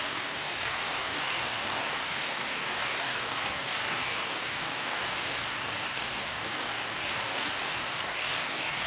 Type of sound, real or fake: fake